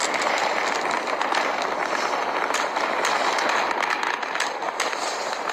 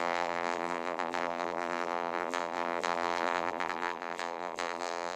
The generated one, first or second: second